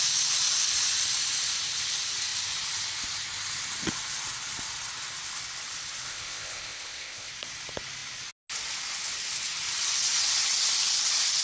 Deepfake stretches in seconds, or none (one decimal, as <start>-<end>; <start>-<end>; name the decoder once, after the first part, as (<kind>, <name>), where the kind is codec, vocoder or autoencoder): 6.1-7.3 (codec, ZipCodec)